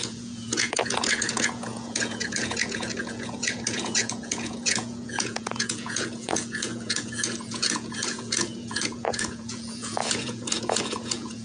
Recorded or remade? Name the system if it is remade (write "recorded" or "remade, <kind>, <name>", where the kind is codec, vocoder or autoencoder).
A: remade, vocoder, Vocos